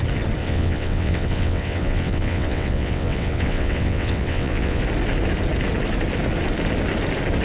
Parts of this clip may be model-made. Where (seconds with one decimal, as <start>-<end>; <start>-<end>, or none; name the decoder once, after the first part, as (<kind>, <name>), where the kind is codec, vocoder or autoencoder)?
0.4-4.8 (vocoder, WaveNeXt)